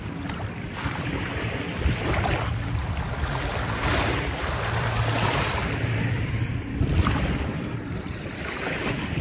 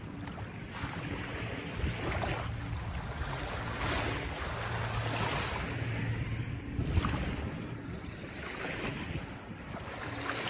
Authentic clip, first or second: second